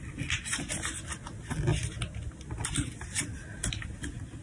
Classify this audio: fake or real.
real